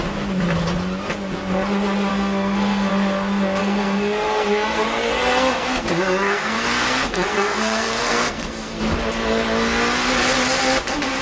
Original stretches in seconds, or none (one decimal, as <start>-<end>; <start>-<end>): 0.0-2.1; 2.9-3.6; 8.8-11.2